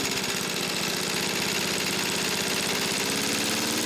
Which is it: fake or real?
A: real